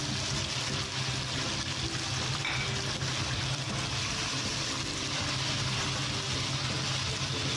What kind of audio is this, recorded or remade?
recorded